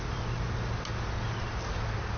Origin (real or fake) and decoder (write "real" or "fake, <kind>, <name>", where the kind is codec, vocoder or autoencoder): real